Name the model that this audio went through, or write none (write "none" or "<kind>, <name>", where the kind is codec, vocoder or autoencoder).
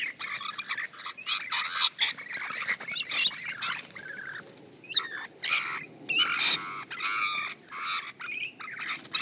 none